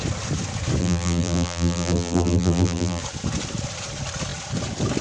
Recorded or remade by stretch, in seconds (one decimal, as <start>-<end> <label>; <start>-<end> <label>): 0.0-0.8 recorded; 0.8-3.0 remade; 3.0-5.0 recorded

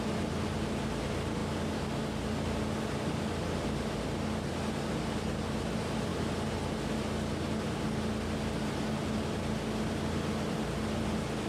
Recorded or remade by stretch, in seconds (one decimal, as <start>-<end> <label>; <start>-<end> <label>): 0.0-11.5 recorded

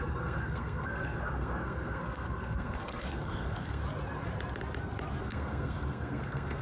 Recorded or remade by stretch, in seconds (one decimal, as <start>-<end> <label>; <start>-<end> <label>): 0.0-3.8 remade; 3.8-5.2 recorded; 5.2-6.6 remade

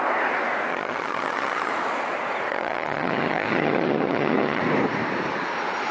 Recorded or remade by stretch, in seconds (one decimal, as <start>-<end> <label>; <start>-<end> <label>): 0.0-0.7 recorded; 0.7-1.7 remade; 1.7-2.5 recorded; 2.5-4.6 remade; 4.6-5.9 recorded

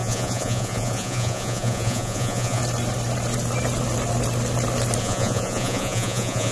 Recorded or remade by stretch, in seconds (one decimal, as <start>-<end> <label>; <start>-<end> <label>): 0.0-2.6 remade; 2.6-5.0 recorded; 5.0-6.5 remade